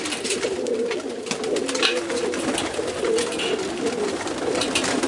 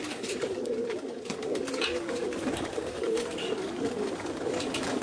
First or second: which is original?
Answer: first